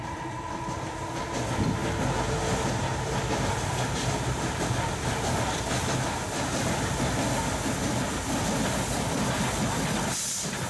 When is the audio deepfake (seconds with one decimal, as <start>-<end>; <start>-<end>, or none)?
none